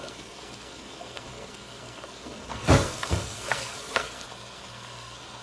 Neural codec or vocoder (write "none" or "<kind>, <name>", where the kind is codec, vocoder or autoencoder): codec, SNAC